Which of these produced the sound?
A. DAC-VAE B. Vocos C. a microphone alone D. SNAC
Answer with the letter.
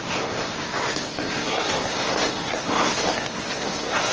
D